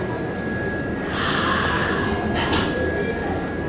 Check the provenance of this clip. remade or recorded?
recorded